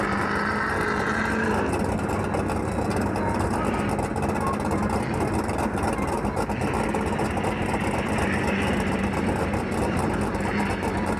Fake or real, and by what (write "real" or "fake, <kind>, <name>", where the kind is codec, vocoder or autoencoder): real